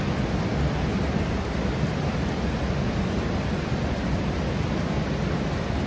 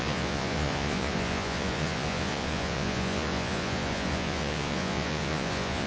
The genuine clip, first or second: first